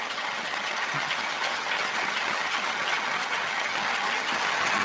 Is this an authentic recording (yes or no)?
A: no